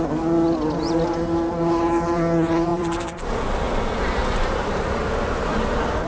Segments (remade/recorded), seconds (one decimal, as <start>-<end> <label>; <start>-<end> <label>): 0.0-2.7 recorded; 2.7-6.1 remade